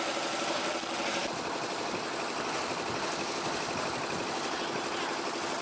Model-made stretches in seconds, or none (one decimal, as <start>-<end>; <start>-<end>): none